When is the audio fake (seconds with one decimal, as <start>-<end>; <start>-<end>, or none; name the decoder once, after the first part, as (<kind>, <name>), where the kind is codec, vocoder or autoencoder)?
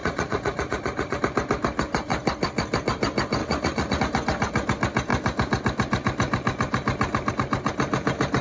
0.0-1.2 (vocoder, Vocos); 3.4-4.0